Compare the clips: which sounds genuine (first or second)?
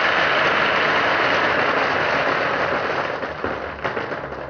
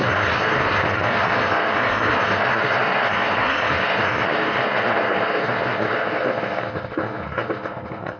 first